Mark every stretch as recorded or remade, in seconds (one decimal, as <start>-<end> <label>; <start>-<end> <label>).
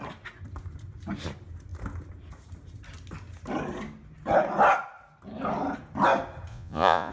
0.0-6.5 recorded; 6.5-7.1 remade